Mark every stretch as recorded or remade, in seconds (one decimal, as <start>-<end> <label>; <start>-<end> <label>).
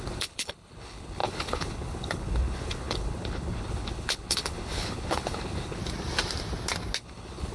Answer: 0.0-5.8 remade; 5.8-7.0 recorded; 7.0-7.5 remade